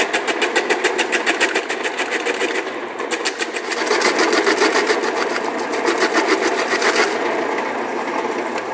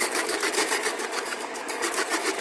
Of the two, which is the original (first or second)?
first